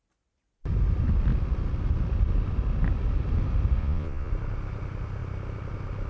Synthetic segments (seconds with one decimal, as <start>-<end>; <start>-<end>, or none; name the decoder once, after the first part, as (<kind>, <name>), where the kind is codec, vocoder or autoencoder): 3.8-4.3 (vocoder, Vocos)